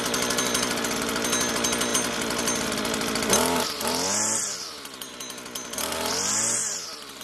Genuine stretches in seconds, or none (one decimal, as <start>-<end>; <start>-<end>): 0.0-6.6